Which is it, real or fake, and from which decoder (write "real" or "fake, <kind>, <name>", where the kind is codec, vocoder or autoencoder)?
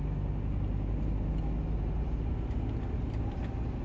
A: real